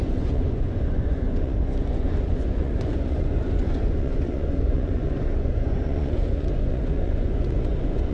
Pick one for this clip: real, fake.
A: fake